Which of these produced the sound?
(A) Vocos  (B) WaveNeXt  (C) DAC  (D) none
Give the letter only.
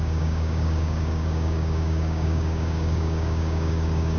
C